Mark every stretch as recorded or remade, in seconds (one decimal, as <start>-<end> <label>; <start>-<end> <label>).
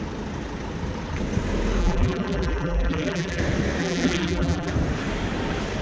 0.0-1.8 recorded; 1.8-3.4 remade; 3.4-3.8 recorded; 3.8-4.7 remade; 4.7-5.8 recorded